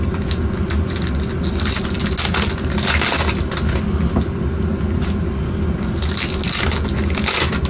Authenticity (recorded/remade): recorded